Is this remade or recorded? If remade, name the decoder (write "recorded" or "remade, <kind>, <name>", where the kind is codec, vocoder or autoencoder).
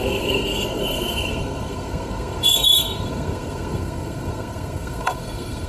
remade, codec, SNAC